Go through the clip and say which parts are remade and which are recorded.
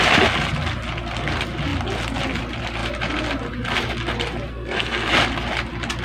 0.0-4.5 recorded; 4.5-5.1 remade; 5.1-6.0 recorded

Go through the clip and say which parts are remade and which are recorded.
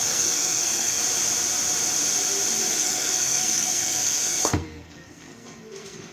0.0-1.0 remade; 1.0-2.7 recorded; 2.7-6.1 remade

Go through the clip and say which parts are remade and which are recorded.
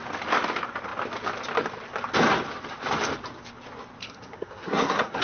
0.0-4.0 recorded; 4.0-5.2 remade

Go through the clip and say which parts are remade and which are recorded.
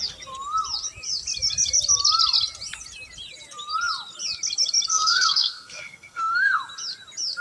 0.0-4.9 recorded; 4.9-6.6 remade; 6.6-7.4 recorded